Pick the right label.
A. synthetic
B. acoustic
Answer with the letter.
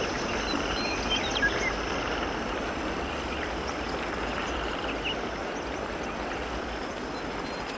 B